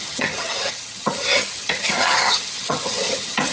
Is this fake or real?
fake